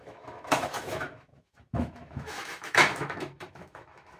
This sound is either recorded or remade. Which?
remade